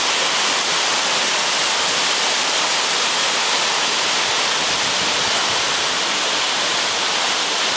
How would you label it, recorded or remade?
recorded